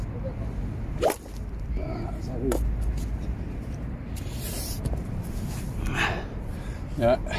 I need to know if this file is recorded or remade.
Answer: remade